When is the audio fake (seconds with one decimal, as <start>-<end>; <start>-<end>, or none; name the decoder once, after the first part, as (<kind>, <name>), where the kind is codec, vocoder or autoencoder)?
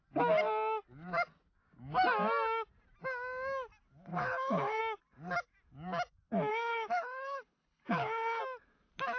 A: 4.1-4.8 (codec, HILCodec); 6.5-8.4